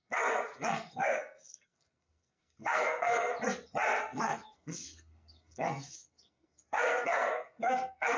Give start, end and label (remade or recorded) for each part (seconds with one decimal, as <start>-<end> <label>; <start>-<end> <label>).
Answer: 0.0-3.3 remade; 3.3-4.0 recorded; 4.0-8.2 remade